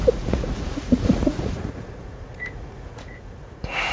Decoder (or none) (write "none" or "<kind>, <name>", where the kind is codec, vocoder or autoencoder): vocoder, Vocos